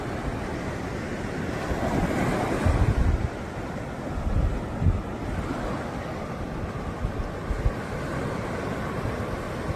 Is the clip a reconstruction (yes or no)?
no